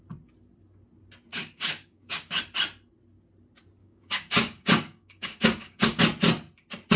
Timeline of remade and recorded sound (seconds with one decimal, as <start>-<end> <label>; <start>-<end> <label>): 0.0-1.3 recorded; 1.3-2.4 remade; 2.4-3.8 recorded; 3.8-6.0 remade; 6.0-7.0 recorded